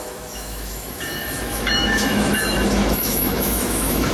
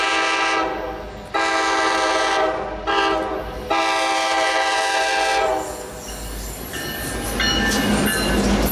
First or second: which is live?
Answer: second